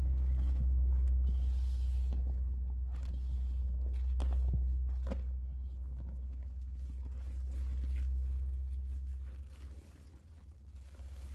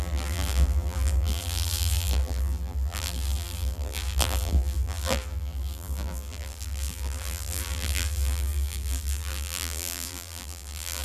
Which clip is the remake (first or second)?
second